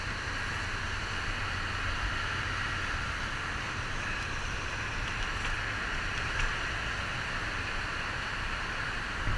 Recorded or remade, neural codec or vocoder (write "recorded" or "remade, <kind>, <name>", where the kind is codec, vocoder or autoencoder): recorded